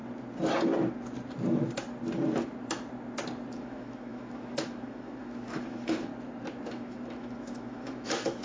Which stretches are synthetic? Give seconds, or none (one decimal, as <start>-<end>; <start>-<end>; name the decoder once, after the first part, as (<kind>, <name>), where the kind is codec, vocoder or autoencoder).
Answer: 3.5-6.1 (autoencoder, DAC-VAE); 6.7-8.4